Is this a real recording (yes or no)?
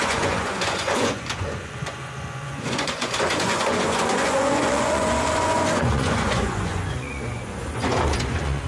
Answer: no